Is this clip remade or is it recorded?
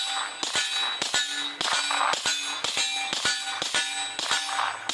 recorded